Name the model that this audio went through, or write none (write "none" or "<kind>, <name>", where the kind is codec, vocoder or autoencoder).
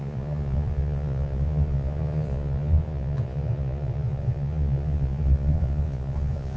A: vocoder, Vocos